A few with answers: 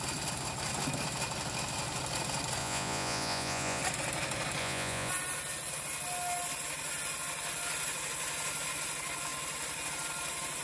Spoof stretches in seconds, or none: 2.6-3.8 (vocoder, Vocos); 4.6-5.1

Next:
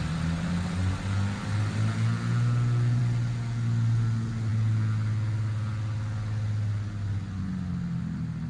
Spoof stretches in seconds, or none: none

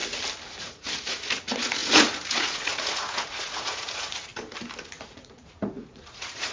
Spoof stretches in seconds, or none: 0.6-4.3 (vocoder, Vocos); 4.8-6.5

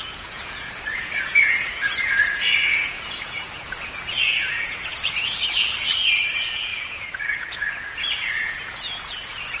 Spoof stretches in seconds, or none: 0.0-9.6 (vocoder, Vocos)

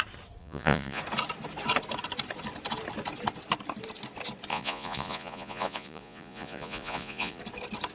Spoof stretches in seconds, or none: 0.4-1.0 (vocoder, Vocos); 4.5-7.4

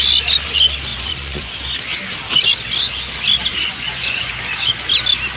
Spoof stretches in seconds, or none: 0.9-1.5 (vocoder, Vocos); 3.5-4.3

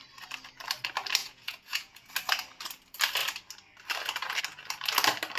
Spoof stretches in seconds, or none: 1.2-2.1 (vocoder, Vocos)